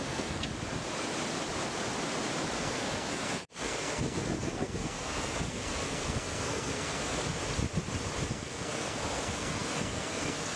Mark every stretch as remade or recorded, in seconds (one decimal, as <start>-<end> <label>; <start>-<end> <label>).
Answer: 0.0-0.5 remade; 0.5-2.6 recorded; 2.6-7.4 remade; 7.4-8.3 recorded; 8.3-10.6 remade